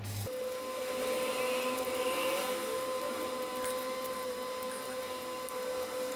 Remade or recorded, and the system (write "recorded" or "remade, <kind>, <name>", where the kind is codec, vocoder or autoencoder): recorded